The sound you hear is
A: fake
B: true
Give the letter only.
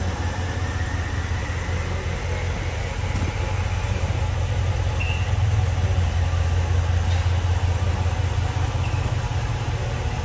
B